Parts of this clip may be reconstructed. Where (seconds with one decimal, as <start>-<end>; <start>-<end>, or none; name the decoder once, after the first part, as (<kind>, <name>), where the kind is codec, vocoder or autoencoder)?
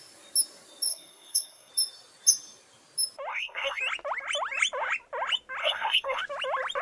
0.9-1.7 (codec, SNAC); 3.3-3.8; 5.6-6.2